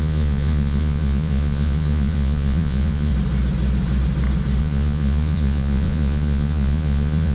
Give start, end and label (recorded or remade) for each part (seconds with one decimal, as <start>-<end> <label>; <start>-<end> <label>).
0.0-3.1 remade; 3.1-4.6 recorded; 4.6-7.3 remade